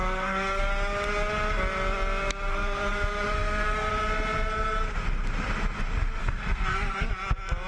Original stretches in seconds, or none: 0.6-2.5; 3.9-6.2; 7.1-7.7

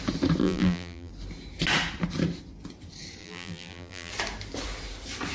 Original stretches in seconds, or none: 0.0-0.4; 1.1-3.2; 4.1-5.3

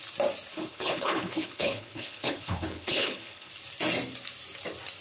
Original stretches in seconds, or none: 0.0-0.5; 3.5-5.0

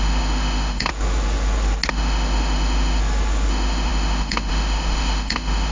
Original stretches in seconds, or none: 0.9-1.9; 3.0-3.5